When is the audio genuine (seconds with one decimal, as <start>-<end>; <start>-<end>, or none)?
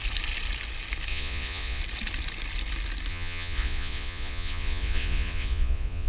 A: 0.0-1.1; 1.8-3.1